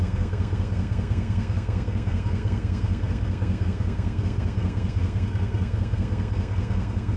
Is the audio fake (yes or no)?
yes